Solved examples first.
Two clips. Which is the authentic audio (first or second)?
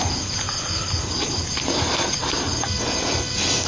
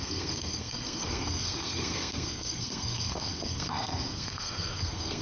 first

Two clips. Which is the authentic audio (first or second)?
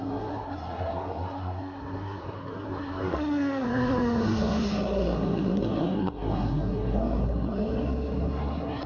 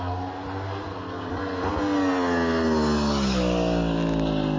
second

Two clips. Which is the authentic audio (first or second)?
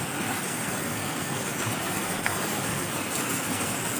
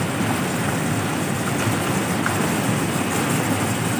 second